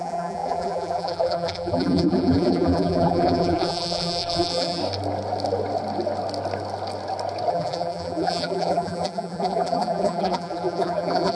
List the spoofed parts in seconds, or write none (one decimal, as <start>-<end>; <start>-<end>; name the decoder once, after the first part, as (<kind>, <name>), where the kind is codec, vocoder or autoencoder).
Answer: 0.0-4.8 (vocoder, BigVGAN v2); 7.5-11.3